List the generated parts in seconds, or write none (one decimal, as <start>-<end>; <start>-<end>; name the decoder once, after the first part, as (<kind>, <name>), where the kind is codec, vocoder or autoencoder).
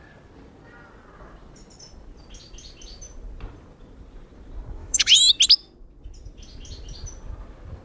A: 4.8-5.3 (autoencoder, DAC-VAE)